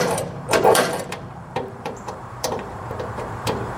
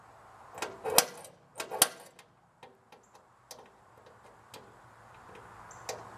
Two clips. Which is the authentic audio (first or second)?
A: second